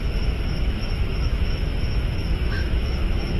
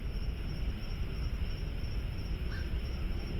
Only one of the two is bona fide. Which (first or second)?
second